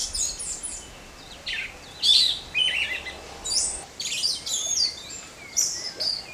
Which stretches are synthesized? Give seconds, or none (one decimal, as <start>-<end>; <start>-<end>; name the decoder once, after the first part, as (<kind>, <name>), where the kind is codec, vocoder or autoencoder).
none